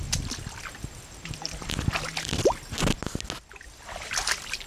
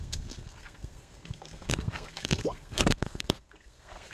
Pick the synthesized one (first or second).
second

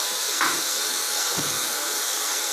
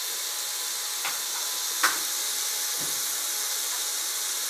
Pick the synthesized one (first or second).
first